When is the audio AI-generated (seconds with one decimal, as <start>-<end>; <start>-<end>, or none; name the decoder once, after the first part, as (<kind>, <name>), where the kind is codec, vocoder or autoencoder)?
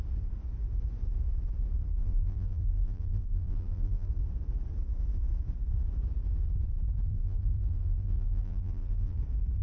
2.0-4.1 (vocoder, BigVGAN v2); 7.1-9.2